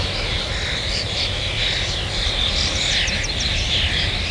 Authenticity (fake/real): real